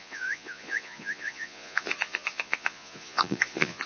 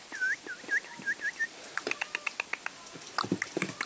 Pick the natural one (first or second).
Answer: second